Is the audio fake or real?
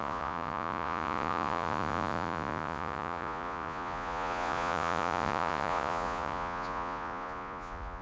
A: fake